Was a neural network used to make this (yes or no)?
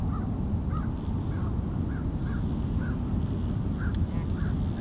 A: no